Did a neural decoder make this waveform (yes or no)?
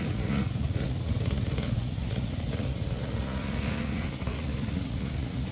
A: yes